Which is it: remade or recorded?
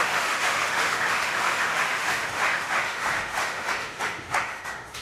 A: remade